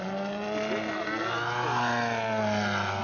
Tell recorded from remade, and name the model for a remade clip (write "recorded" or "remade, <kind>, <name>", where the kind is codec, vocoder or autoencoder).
recorded